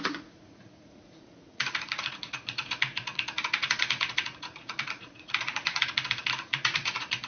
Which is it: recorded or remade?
remade